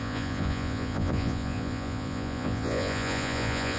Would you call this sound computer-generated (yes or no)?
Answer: yes